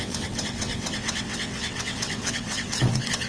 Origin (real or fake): fake